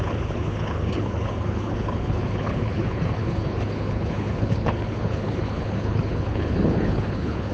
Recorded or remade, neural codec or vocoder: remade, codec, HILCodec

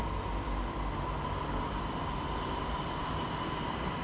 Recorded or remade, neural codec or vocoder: recorded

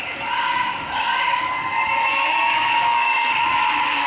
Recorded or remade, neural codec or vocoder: remade, codec, DAC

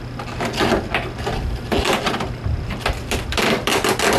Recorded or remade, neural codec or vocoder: recorded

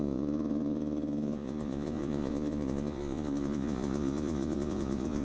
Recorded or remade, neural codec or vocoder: remade, vocoder, Vocos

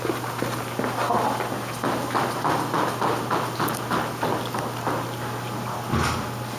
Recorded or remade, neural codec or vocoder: recorded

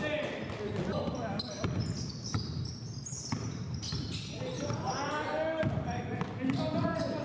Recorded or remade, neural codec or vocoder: recorded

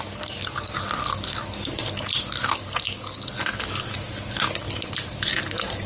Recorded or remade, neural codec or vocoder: recorded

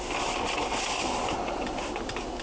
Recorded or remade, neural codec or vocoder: recorded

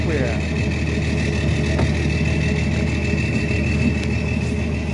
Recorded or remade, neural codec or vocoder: recorded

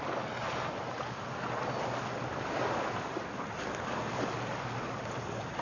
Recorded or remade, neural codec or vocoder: recorded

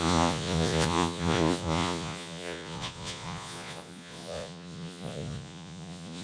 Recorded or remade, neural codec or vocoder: remade, vocoder, Vocos